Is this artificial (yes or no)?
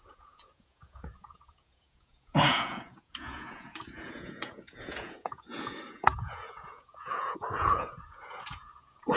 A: yes